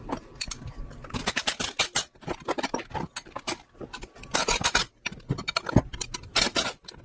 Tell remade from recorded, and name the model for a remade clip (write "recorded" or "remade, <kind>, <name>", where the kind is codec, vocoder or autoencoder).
recorded